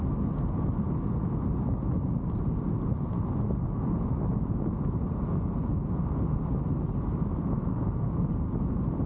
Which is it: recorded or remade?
recorded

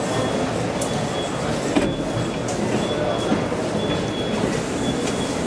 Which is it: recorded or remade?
recorded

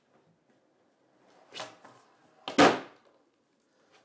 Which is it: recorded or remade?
recorded